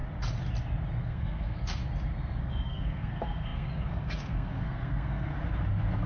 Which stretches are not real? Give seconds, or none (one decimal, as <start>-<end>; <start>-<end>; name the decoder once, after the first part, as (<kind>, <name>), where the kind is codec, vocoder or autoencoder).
1.0-1.8 (codec, SNAC); 2.4-5.3